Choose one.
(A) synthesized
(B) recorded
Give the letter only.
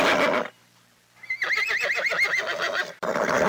B